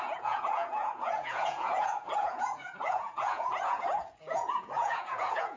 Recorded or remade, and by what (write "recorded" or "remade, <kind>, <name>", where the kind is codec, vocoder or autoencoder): remade, vocoder, Vocos